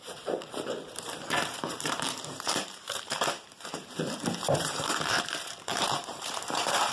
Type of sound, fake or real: fake